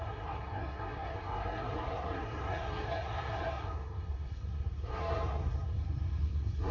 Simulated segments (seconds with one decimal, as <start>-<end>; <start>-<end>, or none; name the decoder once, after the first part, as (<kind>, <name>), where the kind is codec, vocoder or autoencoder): 0.0-6.7 (codec, SNAC)